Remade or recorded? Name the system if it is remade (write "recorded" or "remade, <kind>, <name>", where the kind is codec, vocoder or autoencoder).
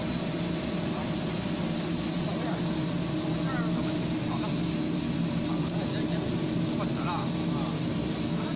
recorded